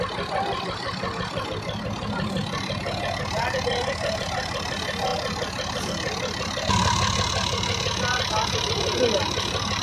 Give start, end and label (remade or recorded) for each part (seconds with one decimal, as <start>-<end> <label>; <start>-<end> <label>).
0.0-9.8 recorded